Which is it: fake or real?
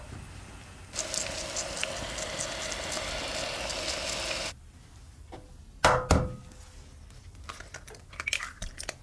real